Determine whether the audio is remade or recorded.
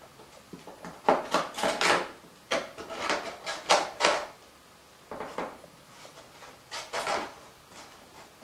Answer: recorded